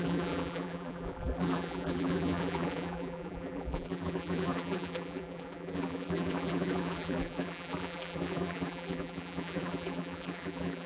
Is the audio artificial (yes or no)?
yes